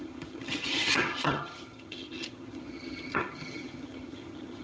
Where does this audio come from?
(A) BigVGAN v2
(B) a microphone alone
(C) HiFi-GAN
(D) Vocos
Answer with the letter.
C